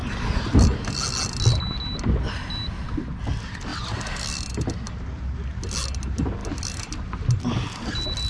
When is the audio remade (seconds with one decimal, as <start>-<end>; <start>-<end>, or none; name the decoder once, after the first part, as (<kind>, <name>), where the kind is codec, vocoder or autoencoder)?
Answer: 0.0-0.6 (vocoder, BigVGAN v2)